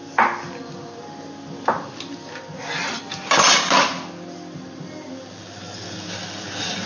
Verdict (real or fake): real